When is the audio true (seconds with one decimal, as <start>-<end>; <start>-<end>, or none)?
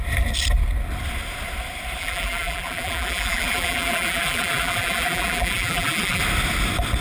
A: 0.0-2.0; 6.2-7.0